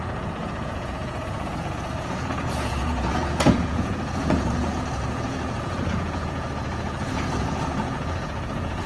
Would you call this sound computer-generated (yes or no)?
yes